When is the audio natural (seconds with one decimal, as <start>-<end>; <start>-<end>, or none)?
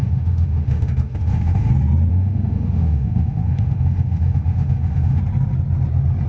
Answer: 1.7-2.1; 5.2-6.3